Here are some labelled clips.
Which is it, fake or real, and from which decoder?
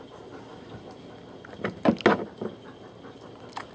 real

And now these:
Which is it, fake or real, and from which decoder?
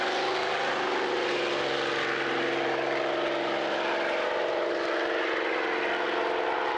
real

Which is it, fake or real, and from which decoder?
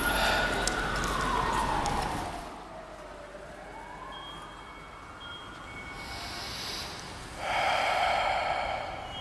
real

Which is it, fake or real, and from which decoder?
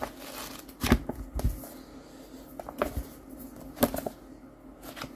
real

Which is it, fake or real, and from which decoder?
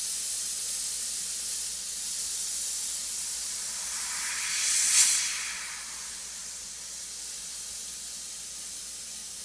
real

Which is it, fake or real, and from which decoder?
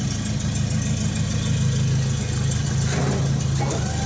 real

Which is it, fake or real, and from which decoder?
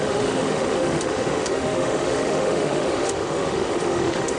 fake, autoencoder, DAC-VAE